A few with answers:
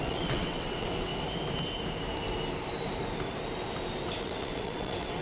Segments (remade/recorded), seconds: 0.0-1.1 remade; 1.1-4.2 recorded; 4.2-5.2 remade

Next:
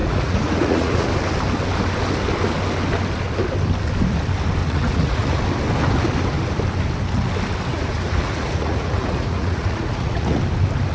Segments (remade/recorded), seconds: 0.0-1.1 remade; 1.1-4.6 recorded; 4.6-5.4 remade; 5.4-7.7 recorded; 7.7-10.4 remade; 10.4-10.9 recorded

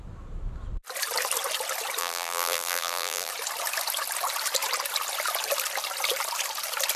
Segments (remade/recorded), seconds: 0.0-2.0 recorded; 2.0-3.3 remade; 3.3-7.0 recorded

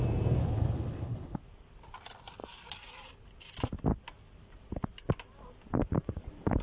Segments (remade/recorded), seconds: 0.0-0.4 recorded; 0.4-1.4 remade; 1.4-6.6 recorded

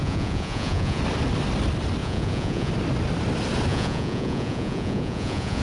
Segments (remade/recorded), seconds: 0.0-1.0 remade; 1.0-2.0 recorded; 2.0-2.7 remade; 2.7-3.7 recorded; 3.7-5.6 remade

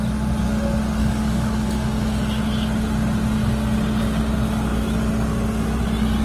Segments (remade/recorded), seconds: 0.0-1.0 recorded; 1.0-2.4 remade; 2.4-6.2 recorded

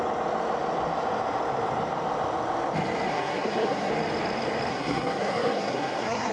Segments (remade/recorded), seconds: 0.0-3.1 recorded; 3.1-3.9 remade; 3.9-4.7 recorded; 4.7-6.3 remade

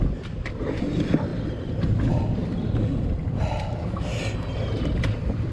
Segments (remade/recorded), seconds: 0.0-5.5 recorded